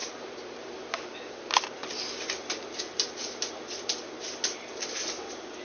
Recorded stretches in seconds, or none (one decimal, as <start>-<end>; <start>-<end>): 0.0-5.6